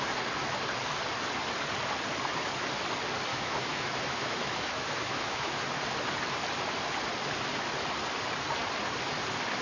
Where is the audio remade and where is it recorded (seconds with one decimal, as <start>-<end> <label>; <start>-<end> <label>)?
0.0-3.3 recorded; 3.3-5.6 remade; 5.6-9.6 recorded